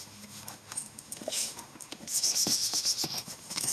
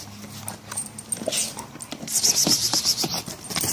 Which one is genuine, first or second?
second